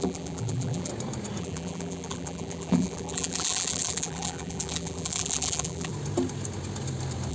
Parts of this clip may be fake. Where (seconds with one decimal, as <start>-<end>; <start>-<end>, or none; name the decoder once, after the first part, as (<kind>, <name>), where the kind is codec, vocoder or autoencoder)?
0.0-0.9 (vocoder, BigVGAN v2); 1.4-5.9